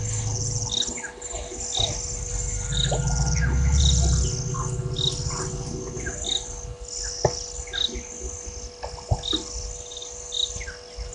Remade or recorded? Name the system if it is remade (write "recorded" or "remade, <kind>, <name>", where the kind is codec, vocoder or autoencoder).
recorded